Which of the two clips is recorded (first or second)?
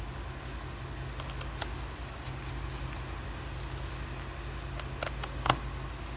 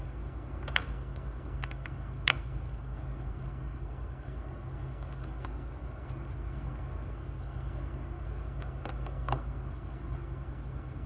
first